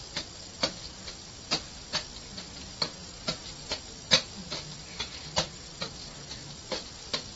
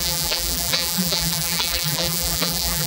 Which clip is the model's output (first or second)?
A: second